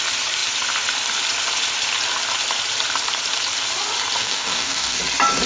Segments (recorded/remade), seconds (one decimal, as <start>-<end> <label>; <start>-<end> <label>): 0.0-4.2 recorded; 4.2-5.0 remade; 5.0-5.5 recorded